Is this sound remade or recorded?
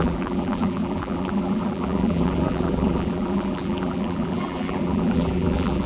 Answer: remade